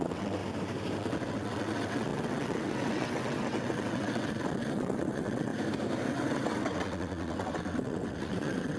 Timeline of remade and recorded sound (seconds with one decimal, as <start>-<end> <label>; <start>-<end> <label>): 0.0-0.4 remade; 0.4-1.0 recorded; 1.0-5.5 remade; 5.5-6.1 recorded; 6.1-8.8 remade